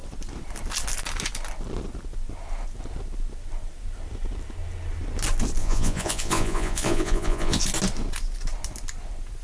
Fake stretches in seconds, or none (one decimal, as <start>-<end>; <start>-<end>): 5.6-7.6